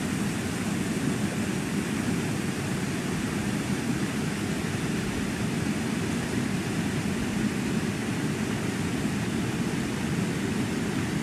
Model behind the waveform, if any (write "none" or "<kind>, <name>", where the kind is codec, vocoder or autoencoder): none